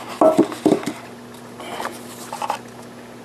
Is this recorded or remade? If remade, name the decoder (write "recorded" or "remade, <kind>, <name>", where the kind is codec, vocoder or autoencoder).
recorded